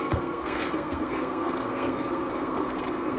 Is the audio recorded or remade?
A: remade